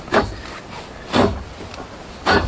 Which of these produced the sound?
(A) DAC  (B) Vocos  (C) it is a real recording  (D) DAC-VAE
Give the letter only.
C